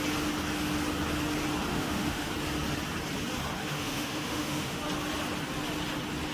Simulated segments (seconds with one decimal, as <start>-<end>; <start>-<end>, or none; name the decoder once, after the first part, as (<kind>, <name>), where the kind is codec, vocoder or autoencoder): 1.7-2.3 (autoencoder, DAC-VAE); 3.6-4.8